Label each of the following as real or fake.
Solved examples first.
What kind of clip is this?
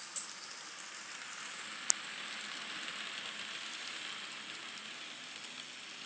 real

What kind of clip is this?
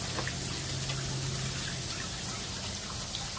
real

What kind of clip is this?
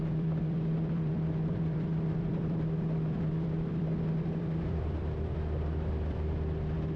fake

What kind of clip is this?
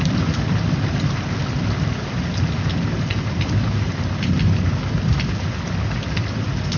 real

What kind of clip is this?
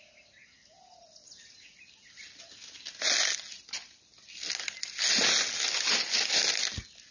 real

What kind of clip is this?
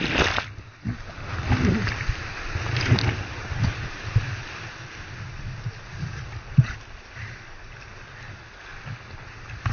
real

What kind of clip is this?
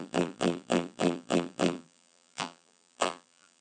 fake